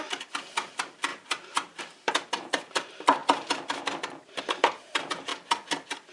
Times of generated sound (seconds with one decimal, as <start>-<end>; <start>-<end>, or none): 0.0-3.2; 4.4-5.3